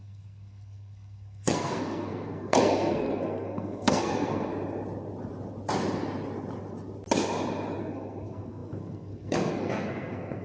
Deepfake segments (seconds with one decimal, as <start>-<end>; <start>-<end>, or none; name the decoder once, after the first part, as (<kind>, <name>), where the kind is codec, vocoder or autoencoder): 0.0-4.5 (codec, SNAC); 7.8-10.4